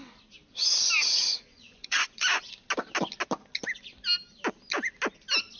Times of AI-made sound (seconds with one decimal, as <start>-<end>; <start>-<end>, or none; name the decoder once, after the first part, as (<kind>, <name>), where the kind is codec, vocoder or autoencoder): 1.5-2.5 (vocoder, Vocos)